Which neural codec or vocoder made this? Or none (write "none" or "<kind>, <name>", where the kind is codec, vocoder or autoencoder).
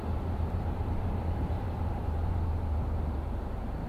vocoder, BigVGAN v2